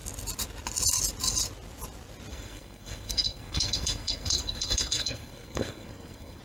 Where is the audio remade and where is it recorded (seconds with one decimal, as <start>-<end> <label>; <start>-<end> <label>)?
0.0-2.3 recorded; 2.3-6.4 remade